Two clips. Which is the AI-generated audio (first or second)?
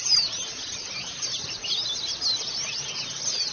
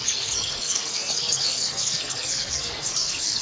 second